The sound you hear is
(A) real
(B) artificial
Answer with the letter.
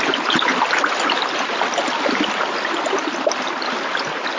A